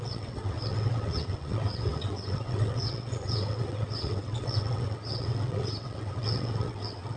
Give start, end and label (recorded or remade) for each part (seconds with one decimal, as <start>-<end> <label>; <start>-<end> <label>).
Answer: 0.0-7.2 remade